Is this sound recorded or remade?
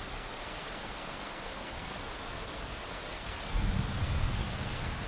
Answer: remade